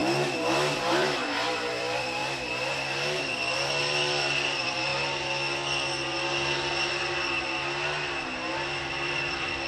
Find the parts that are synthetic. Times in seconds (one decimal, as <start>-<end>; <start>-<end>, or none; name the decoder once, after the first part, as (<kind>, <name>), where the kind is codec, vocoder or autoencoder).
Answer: 0.9-2.2 (vocoder, BigVGAN v2); 3.2-4.9; 8.9-9.7